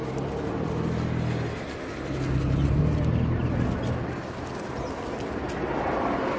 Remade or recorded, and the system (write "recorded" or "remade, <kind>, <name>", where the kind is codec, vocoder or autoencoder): recorded